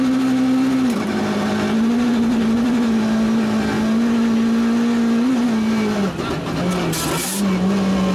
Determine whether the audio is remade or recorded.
recorded